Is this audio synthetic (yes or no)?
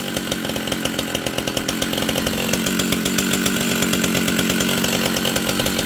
no